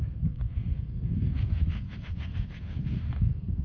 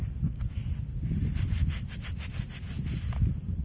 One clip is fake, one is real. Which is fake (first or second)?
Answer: first